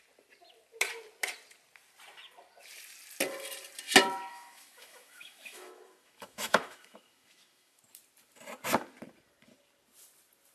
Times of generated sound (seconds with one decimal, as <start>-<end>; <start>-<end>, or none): 4.3-7.8